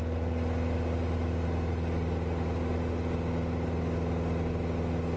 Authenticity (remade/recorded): recorded